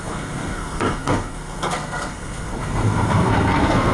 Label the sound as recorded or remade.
remade